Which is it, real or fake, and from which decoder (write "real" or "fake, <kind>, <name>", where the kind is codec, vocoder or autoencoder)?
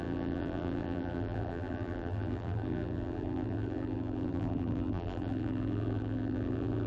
fake, vocoder, BigVGAN v2